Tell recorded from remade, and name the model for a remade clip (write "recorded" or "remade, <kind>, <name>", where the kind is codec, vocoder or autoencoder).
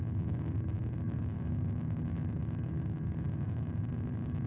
remade, codec, DAC